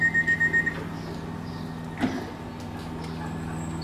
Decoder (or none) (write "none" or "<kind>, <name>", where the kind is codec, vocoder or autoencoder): none